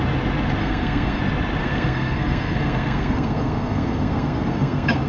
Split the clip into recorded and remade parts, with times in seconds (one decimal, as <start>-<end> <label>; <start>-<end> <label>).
0.0-0.6 recorded; 0.6-1.2 remade; 1.2-1.6 recorded; 1.6-5.1 remade